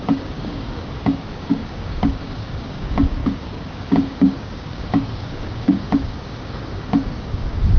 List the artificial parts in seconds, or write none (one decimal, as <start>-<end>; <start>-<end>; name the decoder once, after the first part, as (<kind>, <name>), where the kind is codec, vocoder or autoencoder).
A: 0.0-7.8 (codec, DAC)